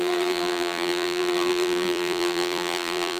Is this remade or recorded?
remade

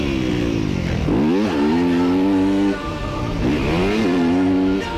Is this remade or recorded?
recorded